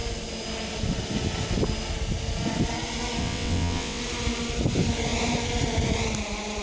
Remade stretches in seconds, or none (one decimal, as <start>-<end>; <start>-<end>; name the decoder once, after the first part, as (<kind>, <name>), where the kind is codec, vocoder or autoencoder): 3.2-4.0 (vocoder, WaveNeXt)